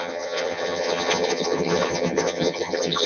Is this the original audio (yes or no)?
no